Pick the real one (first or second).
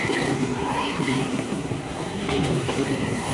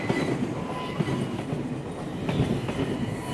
second